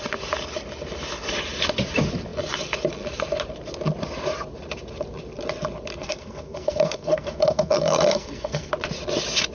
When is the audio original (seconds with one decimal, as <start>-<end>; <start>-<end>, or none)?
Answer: 0.0-6.0; 8.7-9.5